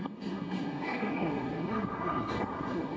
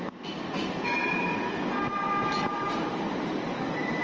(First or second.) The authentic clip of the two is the second